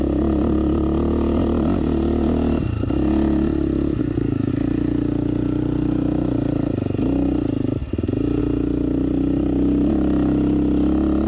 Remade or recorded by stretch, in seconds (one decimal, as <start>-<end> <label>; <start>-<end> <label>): 0.0-4.0 recorded; 4.0-4.5 remade; 4.5-11.3 recorded